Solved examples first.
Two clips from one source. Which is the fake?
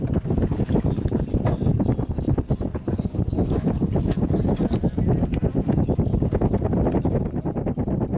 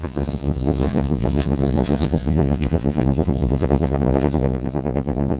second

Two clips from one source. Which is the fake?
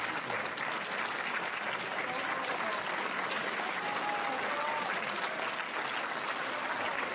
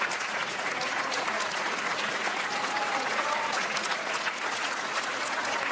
second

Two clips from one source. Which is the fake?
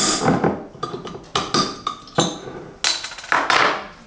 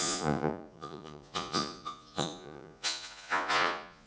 second